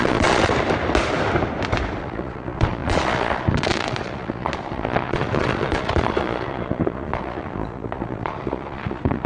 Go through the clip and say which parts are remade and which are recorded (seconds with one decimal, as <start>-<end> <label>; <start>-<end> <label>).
0.0-0.5 remade; 0.5-2.0 recorded; 2.0-9.3 remade